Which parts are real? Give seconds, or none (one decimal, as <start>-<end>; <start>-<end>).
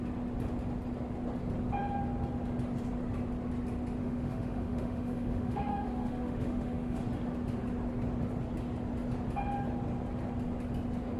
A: 0.0-4.0; 7.0-11.2